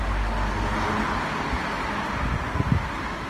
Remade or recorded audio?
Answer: recorded